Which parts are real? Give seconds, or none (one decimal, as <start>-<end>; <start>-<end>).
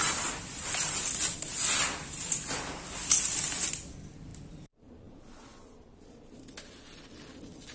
0.0-7.7